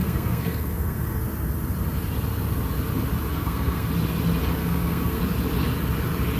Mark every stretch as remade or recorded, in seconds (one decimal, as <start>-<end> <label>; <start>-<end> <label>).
0.0-1.2 remade; 1.2-3.3 recorded; 3.3-3.9 remade; 3.9-4.6 recorded; 4.6-5.2 remade; 5.2-6.4 recorded